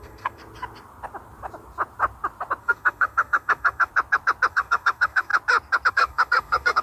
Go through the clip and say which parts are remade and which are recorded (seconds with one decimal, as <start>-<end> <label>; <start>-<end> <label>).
0.0-0.4 remade; 0.4-2.6 recorded; 2.6-3.9 remade; 3.9-4.5 recorded; 4.5-5.3 remade; 5.3-5.9 recorded; 5.9-6.8 remade